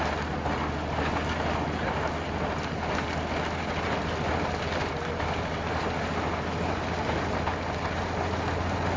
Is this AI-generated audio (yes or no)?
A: no